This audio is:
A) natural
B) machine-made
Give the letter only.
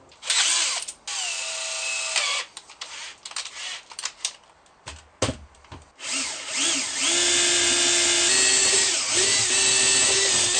A